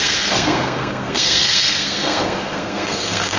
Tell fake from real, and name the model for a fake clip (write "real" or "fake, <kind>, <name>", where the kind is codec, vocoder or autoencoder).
fake, codec, SNAC